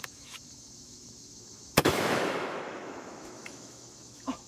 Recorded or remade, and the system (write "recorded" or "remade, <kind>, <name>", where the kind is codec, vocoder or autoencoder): remade, autoencoder, DAC-VAE